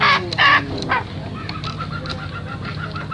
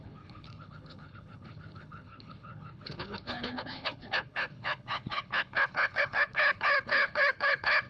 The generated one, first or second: second